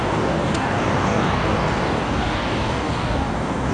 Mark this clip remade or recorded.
remade